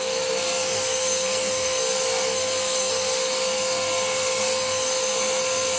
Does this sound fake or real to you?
fake